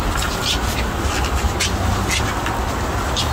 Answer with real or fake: real